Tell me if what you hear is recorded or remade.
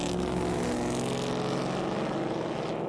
recorded